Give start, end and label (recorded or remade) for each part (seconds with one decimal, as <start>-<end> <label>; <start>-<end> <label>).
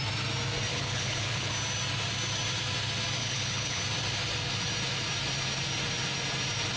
0.0-0.7 recorded; 0.7-1.5 remade; 1.5-3.2 recorded; 3.2-3.8 remade; 3.8-6.8 recorded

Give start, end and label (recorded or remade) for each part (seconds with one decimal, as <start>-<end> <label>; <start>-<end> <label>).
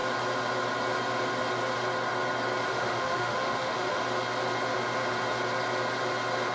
0.0-2.7 recorded; 2.7-4.0 remade; 4.0-6.5 recorded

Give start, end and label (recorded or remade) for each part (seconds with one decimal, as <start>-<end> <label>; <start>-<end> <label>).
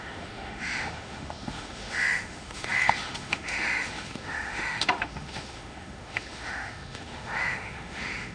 0.0-8.3 remade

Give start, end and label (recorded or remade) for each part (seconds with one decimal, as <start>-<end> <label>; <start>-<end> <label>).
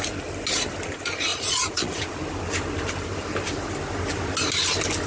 0.0-1.3 recorded; 1.3-2.0 remade; 2.0-5.1 recorded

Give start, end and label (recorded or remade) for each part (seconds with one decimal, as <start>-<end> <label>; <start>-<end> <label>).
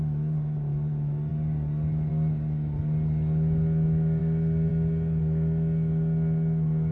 0.0-6.9 recorded